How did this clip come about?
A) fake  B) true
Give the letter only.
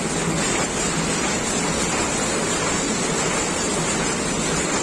B